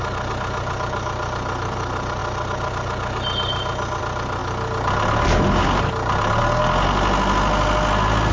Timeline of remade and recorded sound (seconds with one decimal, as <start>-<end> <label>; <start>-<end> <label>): 0.0-8.3 recorded